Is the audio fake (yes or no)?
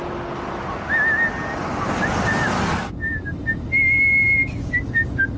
no